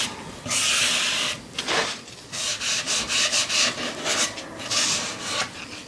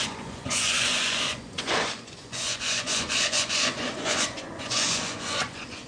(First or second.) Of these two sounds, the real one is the first